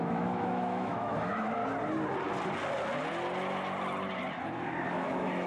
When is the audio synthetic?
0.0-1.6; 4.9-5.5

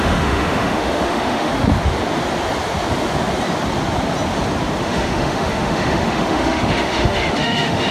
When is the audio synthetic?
0.0-1.5; 4.8-7.9

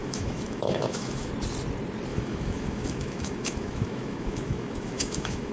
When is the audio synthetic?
0.0-1.3; 2.1-5.5

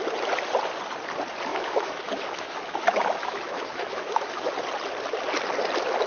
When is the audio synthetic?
1.5-4.5

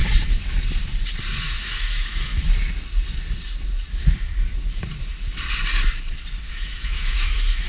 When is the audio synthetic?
1.4-2.3; 6.5-7.7

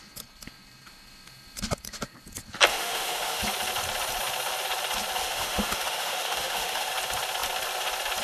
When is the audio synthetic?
2.7-3.4; 5.2-6.9